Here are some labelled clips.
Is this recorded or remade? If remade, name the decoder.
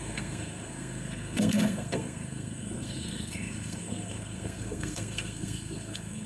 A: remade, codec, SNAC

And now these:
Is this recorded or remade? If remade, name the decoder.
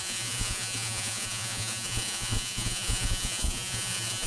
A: remade, vocoder, Vocos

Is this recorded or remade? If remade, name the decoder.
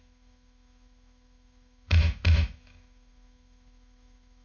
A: remade, autoencoder, DAC-VAE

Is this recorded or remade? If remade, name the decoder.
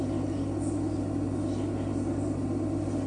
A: recorded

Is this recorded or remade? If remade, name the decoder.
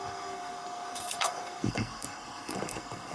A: remade, codec, SNAC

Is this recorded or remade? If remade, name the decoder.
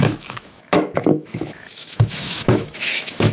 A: remade, autoencoder, DAC-VAE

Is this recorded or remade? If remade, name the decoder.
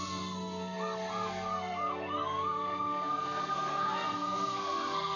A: remade, codec, SNAC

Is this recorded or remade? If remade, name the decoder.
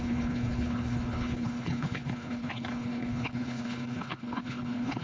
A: remade, codec, HILCodec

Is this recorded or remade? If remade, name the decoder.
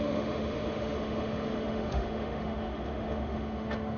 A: remade, autoencoder, DAC-VAE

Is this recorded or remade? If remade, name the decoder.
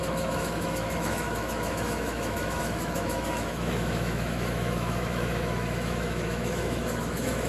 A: remade, autoencoder, DAC-VAE